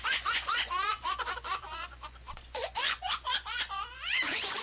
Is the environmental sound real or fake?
fake